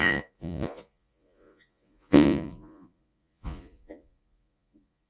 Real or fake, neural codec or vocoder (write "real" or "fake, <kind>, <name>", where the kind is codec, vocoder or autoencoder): fake, vocoder, Vocos